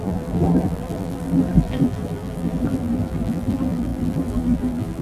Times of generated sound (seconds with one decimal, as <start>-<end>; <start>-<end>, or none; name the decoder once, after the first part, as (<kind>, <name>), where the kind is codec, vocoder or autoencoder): 0.0-5.0 (vocoder, BigVGAN v2)